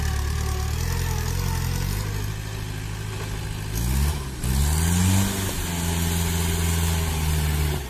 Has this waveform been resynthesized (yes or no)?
no